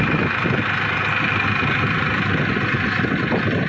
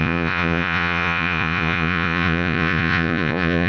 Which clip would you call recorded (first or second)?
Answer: first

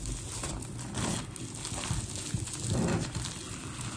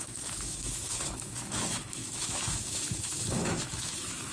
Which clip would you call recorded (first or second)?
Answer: first